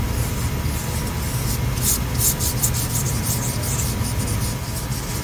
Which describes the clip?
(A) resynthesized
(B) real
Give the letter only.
B